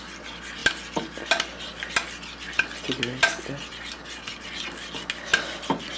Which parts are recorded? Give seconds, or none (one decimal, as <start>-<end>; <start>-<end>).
0.0-6.0